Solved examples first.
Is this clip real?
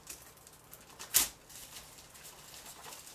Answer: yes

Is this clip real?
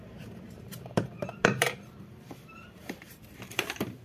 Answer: no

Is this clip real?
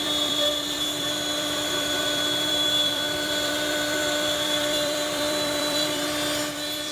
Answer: no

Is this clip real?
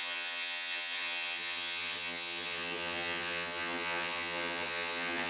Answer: no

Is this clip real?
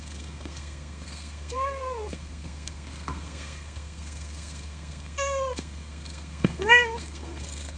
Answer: no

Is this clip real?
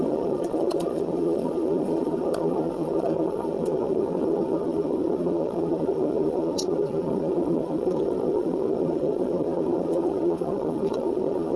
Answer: no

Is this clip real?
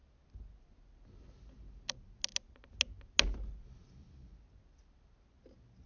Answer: yes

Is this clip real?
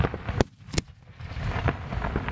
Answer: yes